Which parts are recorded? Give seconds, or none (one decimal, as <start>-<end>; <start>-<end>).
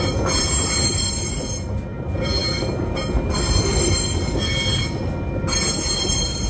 0.0-6.5